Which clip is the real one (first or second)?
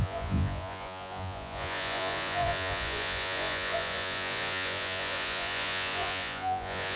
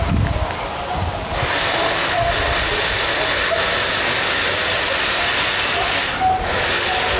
second